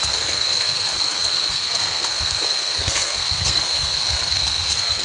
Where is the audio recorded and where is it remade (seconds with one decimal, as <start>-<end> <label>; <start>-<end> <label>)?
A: 0.0-5.0 remade